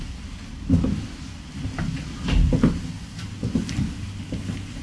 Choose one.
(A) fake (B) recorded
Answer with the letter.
B